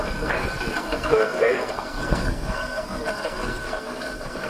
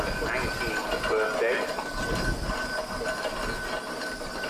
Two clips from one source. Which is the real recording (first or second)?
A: second